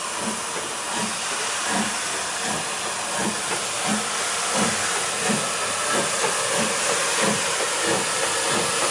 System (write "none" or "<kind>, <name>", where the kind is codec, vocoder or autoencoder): none